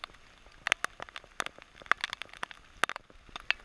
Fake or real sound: real